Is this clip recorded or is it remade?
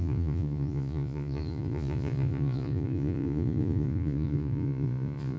remade